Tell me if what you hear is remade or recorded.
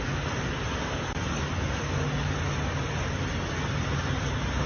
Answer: recorded